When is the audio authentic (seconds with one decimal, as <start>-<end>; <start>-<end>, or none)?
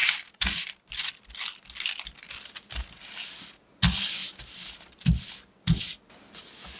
1.1-4.2; 5.8-6.8